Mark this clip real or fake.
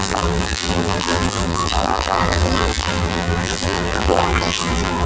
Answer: fake